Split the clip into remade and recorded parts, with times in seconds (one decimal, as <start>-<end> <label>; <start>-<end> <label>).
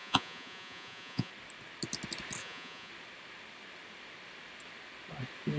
0.0-1.3 remade; 1.3-2.4 recorded; 2.4-2.9 remade; 2.9-5.6 recorded